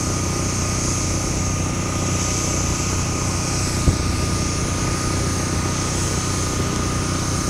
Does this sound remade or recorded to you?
recorded